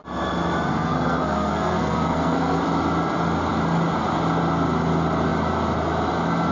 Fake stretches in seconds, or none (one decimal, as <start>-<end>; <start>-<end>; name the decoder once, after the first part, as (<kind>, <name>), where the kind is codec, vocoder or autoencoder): 0.7-2.6 (codec, SNAC)